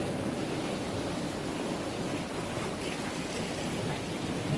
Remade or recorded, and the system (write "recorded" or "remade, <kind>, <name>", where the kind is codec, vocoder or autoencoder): recorded